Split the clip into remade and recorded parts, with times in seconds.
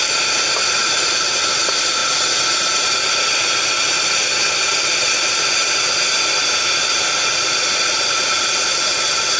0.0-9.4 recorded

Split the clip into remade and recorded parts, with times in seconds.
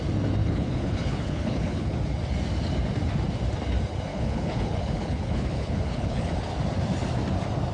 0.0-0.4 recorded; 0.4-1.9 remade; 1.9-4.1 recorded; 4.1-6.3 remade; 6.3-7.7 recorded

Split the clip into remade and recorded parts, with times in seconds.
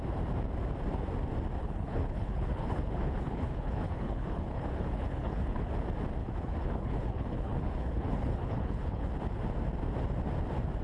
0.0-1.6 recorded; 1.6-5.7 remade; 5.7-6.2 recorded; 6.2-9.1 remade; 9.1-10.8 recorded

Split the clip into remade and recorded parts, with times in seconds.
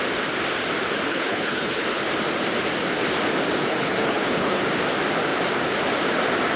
0.0-1.1 recorded; 1.1-2.0 remade; 2.0-3.7 recorded; 3.7-4.6 remade; 4.6-6.6 recorded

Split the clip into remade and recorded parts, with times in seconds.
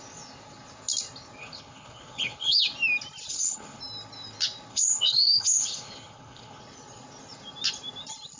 0.0-1.4 recorded; 1.4-2.6 remade; 2.6-3.3 recorded; 3.3-3.8 remade; 3.8-4.7 recorded; 4.7-6.6 remade; 6.6-8.4 recorded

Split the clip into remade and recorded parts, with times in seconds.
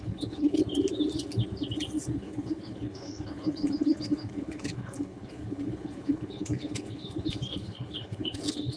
0.0-0.6 remade; 0.6-2.1 recorded; 2.1-8.8 remade